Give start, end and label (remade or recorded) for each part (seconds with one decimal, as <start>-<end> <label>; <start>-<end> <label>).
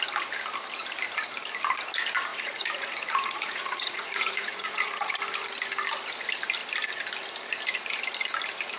0.0-2.3 recorded; 2.3-5.1 remade; 5.1-8.8 recorded